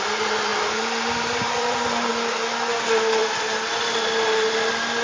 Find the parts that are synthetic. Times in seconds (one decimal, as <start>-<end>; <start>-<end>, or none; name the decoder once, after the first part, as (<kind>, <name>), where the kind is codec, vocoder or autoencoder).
0.5-2.1 (vocoder, BigVGAN v2)